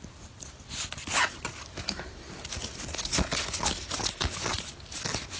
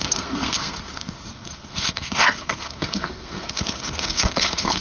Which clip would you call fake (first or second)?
second